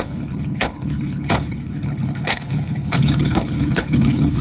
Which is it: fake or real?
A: fake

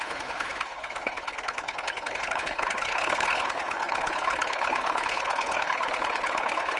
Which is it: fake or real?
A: fake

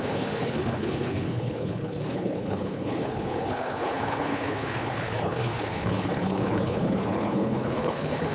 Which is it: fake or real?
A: fake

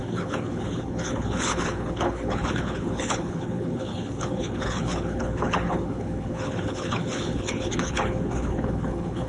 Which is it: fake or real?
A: fake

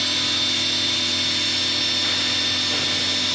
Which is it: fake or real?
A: real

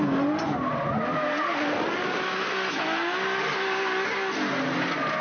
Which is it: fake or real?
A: real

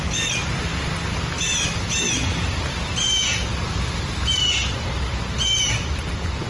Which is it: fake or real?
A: real